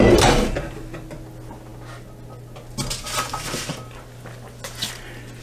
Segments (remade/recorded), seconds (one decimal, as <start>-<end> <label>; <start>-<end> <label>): 0.0-5.4 recorded